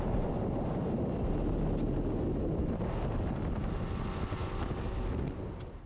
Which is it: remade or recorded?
recorded